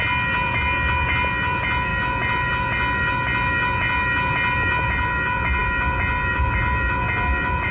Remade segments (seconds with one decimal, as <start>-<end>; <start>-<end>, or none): none